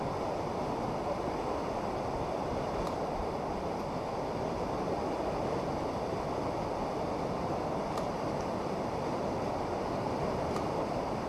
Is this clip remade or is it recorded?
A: recorded